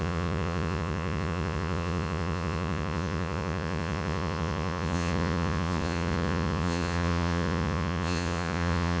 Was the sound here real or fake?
fake